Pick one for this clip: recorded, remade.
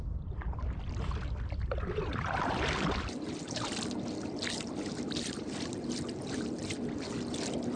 remade